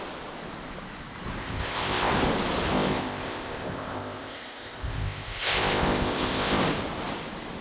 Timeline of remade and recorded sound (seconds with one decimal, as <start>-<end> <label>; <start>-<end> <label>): 0.0-1.4 recorded; 1.4-2.1 remade; 2.1-2.7 recorded; 2.7-6.6 remade; 6.6-7.6 recorded